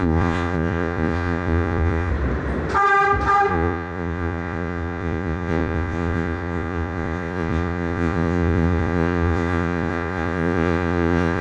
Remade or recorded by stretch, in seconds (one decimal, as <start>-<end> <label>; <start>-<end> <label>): 0.0-2.1 remade; 2.1-3.5 recorded; 3.5-11.4 remade